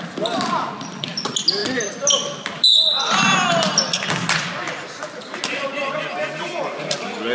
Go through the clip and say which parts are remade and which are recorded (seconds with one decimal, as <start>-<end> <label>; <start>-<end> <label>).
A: 0.0-7.3 recorded